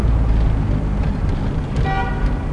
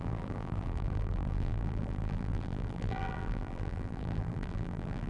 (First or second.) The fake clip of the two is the second